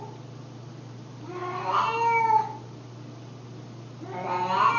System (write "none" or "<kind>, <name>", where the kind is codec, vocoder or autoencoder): none